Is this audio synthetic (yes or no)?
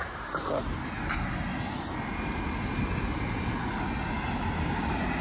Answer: no